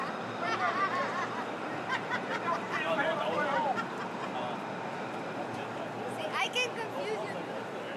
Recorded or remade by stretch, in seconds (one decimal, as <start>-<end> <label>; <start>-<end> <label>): 0.0-1.3 recorded; 1.3-3.6 remade; 3.6-8.0 recorded